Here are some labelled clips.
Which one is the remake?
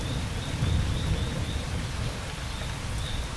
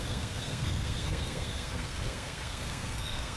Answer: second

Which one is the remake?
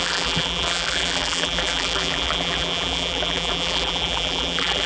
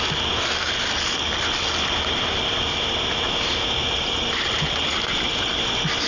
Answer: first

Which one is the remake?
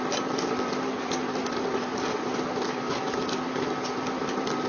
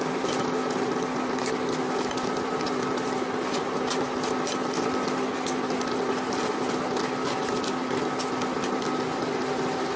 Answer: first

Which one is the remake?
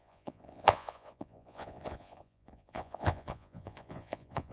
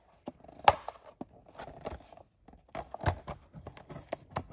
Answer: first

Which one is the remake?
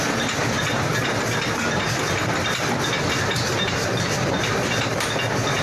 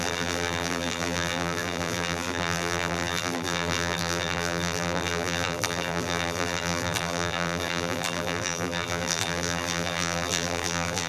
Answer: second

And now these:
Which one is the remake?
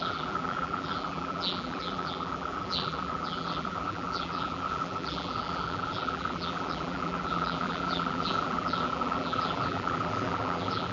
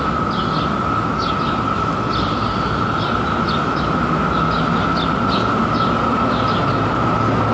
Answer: first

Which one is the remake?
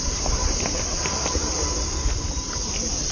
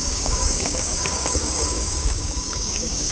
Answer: second